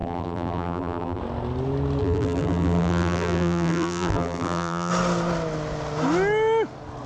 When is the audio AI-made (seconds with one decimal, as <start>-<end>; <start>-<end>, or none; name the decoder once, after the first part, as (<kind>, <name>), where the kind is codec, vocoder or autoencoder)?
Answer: 0.0-1.2 (vocoder, BigVGAN v2); 2.0-4.9